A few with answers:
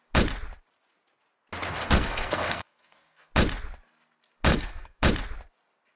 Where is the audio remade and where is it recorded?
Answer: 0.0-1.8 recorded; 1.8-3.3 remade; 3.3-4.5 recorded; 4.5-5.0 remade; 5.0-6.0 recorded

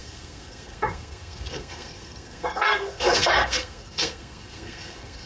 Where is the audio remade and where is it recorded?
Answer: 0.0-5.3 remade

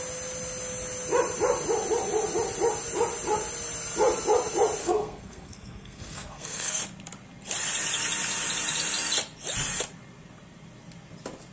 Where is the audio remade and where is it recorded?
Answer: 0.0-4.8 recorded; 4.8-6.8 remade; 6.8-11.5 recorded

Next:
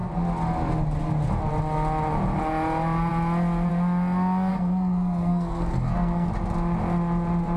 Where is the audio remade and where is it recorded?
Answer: 0.0-4.5 recorded; 4.5-6.3 remade; 6.3-7.6 recorded

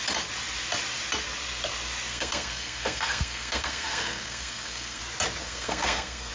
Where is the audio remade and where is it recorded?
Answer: 0.0-2.1 recorded; 2.1-5.0 remade; 5.0-5.4 recorded; 5.4-6.3 remade

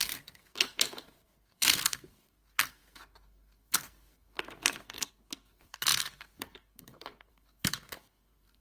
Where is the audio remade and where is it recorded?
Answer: 0.0-8.6 remade

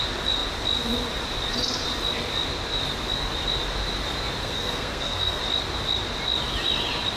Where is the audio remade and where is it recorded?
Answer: 0.0-4.4 recorded; 4.4-5.4 remade; 5.4-7.2 recorded

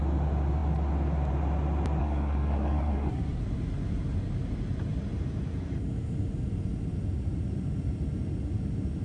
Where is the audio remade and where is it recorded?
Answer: 0.0-2.0 recorded; 2.0-3.4 remade; 3.4-9.0 recorded